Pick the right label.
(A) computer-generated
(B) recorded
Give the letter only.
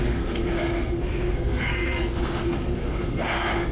A